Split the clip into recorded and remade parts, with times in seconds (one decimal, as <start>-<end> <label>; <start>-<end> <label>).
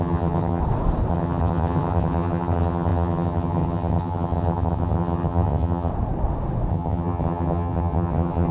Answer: 0.0-0.6 remade; 0.6-1.1 recorded; 1.1-5.9 remade; 5.9-6.7 recorded; 6.7-8.5 remade